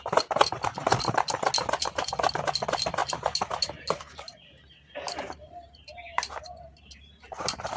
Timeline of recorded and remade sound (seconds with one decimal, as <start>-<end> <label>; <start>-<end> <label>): 0.0-3.0 recorded; 3.0-7.8 remade